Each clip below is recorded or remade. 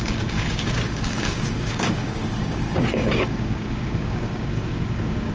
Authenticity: remade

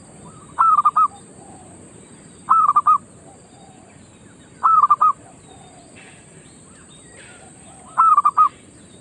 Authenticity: remade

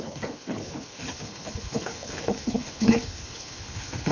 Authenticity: remade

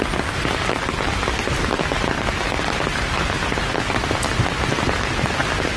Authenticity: recorded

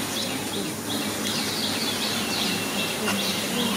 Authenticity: recorded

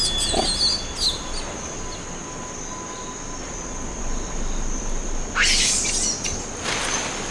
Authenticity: recorded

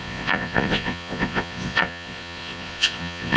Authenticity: remade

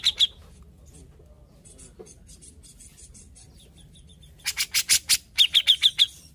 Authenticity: recorded